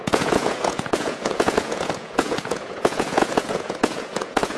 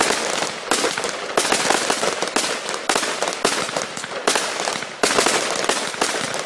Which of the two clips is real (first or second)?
second